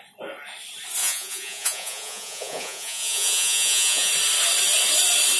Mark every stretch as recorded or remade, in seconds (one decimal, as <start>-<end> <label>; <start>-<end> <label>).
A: 0.0-1.0 recorded; 1.0-4.1 remade; 4.1-5.4 recorded